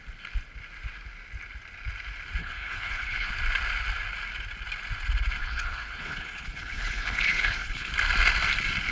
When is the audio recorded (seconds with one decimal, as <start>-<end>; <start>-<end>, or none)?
0.0-2.4; 3.3-5.4; 7.9-8.9

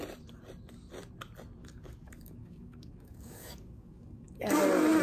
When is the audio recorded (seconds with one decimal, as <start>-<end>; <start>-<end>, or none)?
0.0-1.6; 4.6-5.0